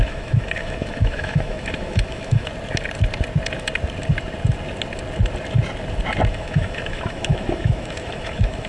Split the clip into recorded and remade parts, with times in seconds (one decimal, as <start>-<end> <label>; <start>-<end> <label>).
0.0-2.5 remade; 2.5-6.3 recorded; 6.3-8.7 remade